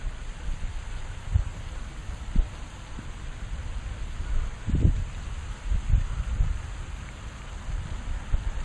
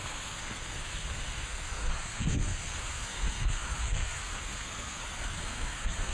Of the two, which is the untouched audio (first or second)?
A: first